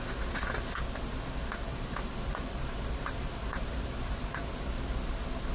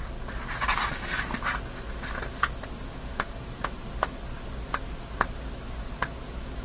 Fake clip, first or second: first